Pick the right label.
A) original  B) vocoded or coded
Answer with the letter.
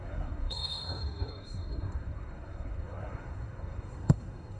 B